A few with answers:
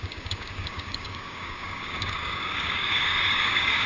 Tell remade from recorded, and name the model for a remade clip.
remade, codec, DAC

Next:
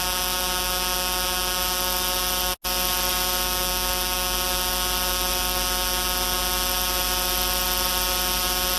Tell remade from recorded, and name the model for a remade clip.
recorded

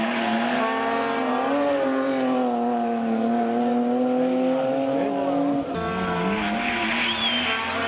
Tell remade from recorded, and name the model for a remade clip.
recorded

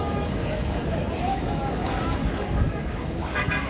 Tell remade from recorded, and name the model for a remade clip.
remade, codec, DAC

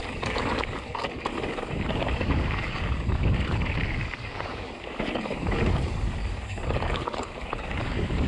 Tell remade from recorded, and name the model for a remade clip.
remade, codec, DAC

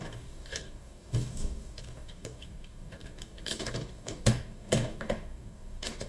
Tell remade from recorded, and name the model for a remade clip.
remade, codec, DAC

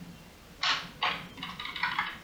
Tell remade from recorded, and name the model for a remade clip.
recorded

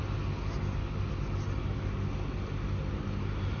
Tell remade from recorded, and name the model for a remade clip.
recorded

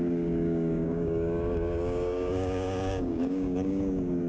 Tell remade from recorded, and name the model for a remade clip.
remade, codec, DAC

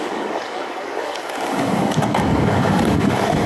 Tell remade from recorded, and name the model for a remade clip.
remade, codec, DAC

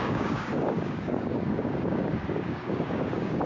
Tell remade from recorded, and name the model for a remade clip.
remade, codec, DAC